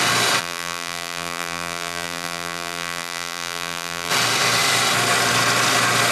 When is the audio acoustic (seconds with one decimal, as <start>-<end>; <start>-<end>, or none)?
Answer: 0.0-0.4; 4.1-6.1